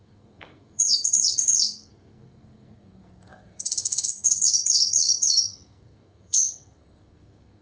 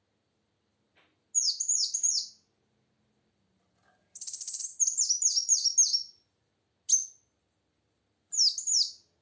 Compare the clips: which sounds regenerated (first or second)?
first